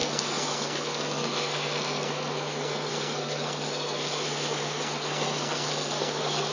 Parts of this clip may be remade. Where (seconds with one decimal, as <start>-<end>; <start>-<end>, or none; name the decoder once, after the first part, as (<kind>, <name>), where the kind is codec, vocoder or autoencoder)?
0.0-6.5 (codec, SNAC)